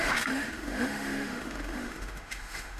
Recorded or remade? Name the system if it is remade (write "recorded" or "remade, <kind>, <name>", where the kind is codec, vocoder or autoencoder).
remade, autoencoder, DAC-VAE